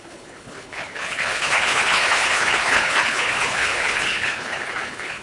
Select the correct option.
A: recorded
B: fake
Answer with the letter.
B